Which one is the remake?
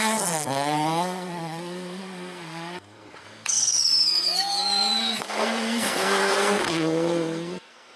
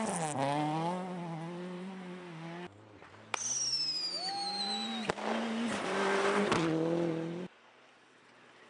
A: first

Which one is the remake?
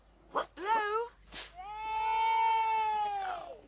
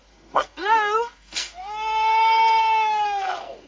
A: second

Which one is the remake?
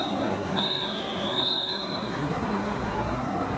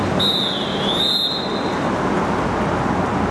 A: first